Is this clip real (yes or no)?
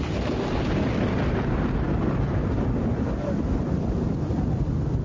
yes